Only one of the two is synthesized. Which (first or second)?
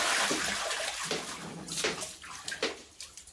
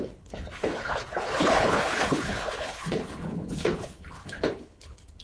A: second